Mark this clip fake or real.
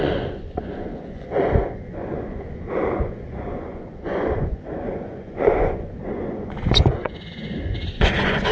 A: fake